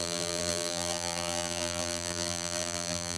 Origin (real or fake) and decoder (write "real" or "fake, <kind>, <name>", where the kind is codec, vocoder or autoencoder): fake, vocoder, BigVGAN v2